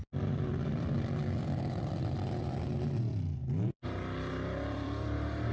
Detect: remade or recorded remade